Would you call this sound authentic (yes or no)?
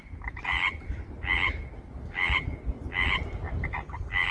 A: yes